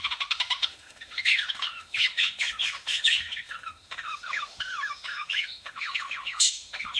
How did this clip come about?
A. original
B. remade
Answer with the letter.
B